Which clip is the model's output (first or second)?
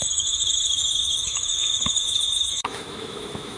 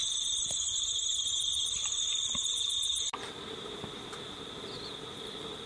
first